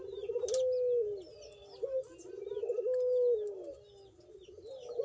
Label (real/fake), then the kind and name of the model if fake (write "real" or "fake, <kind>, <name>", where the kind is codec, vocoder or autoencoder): real